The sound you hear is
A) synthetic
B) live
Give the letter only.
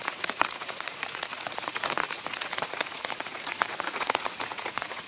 A